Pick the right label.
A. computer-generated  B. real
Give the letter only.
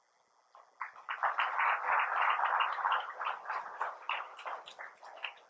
B